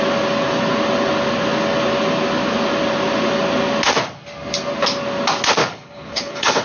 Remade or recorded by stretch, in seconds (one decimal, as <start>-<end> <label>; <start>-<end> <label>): 0.0-5.6 recorded; 5.6-6.6 remade

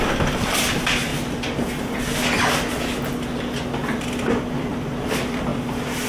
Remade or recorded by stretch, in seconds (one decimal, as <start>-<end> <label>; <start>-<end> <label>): 0.0-1.1 remade; 1.1-4.3 recorded; 4.3-6.1 remade

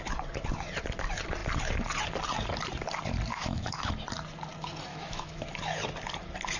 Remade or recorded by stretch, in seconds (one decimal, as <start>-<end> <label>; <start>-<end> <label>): 0.0-3.3 recorded; 3.3-3.9 remade; 3.9-4.9 recorded; 4.9-5.5 remade; 5.5-6.6 recorded